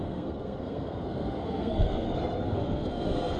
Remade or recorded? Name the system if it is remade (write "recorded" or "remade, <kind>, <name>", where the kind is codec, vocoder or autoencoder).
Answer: remade, codec, SNAC